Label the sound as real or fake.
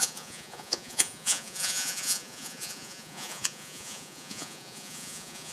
fake